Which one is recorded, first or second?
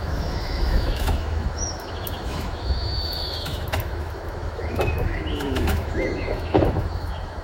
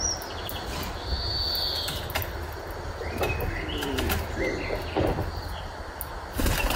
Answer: second